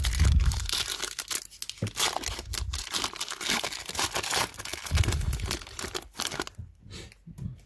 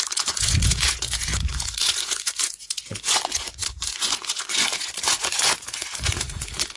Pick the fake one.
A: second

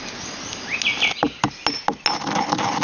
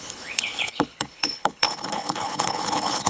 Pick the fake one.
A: second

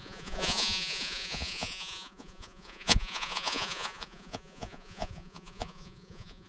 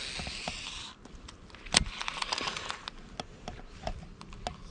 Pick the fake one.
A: first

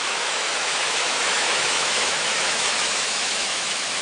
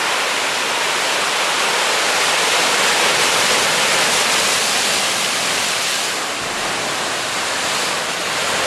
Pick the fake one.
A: first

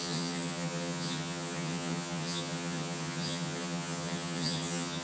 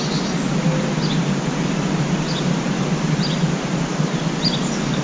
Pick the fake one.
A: first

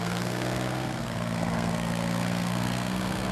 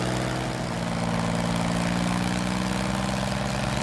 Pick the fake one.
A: first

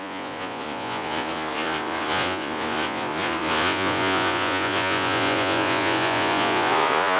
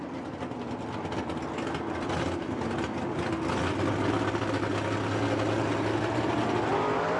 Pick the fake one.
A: first